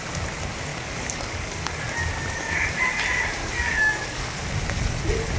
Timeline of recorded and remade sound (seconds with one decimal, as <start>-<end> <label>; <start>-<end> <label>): 0.0-0.7 recorded; 0.7-1.6 remade; 1.6-3.4 recorded; 3.4-4.4 remade; 4.4-5.4 recorded